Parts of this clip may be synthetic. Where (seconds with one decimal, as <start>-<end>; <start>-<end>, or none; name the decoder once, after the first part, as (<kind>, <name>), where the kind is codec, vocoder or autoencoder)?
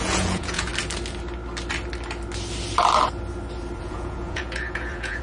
0.0-0.7 (vocoder, Vocos); 3.8-5.2